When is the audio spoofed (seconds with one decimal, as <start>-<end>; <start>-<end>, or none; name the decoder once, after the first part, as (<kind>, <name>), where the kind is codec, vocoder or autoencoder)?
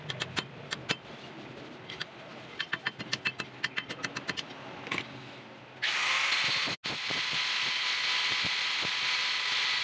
none